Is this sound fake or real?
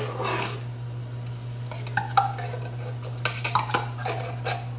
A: real